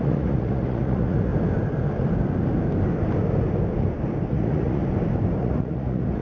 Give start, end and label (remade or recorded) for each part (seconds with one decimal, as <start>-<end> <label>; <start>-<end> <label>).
0.0-1.3 remade; 1.3-4.3 recorded; 4.3-4.8 remade; 4.8-5.4 recorded; 5.4-6.2 remade